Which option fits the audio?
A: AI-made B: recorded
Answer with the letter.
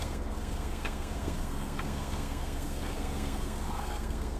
A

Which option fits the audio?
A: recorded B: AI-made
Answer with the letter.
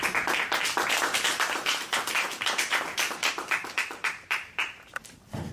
B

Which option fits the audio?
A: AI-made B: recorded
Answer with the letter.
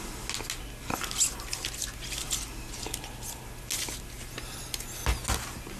B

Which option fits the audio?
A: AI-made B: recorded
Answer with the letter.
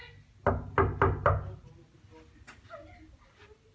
B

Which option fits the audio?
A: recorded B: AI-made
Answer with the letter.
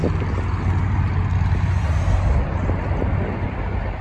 A